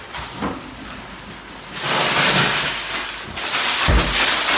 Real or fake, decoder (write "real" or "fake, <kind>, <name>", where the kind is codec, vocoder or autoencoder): real